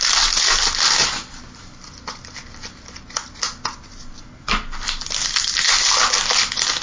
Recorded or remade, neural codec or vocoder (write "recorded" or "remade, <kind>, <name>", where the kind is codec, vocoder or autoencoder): recorded